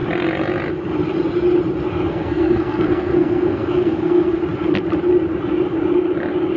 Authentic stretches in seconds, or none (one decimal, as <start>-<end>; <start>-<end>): 0.0-2.1; 4.4-6.6